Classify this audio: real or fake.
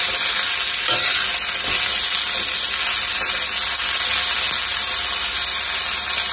real